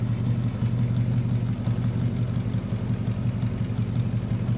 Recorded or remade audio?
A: recorded